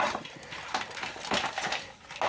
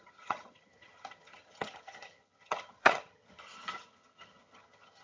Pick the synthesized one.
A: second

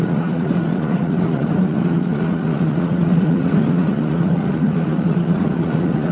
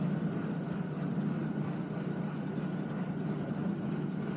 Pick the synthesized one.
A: first